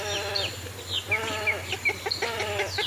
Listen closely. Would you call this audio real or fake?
real